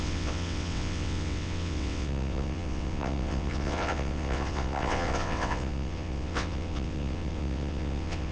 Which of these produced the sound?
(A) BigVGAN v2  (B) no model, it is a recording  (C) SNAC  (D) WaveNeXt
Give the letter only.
D